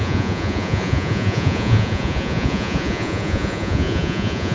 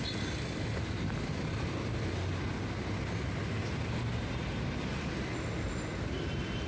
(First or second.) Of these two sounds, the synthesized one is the first